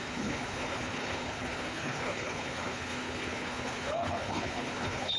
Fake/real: fake